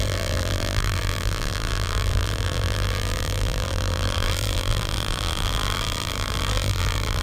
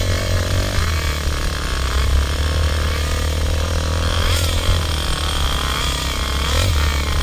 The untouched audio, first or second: second